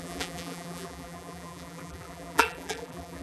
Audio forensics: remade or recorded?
remade